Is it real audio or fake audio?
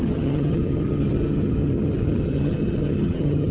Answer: fake